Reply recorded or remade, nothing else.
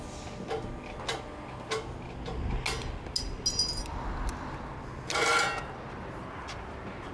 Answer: recorded